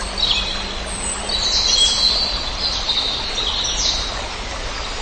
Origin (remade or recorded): recorded